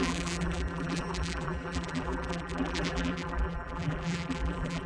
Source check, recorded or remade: remade